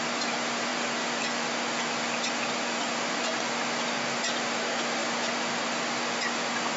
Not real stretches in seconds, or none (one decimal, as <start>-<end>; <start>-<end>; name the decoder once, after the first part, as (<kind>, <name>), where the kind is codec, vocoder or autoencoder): none